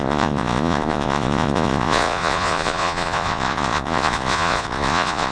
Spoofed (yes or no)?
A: yes